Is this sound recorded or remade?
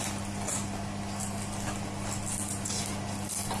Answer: recorded